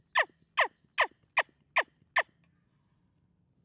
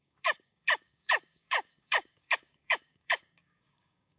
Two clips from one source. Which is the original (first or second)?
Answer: first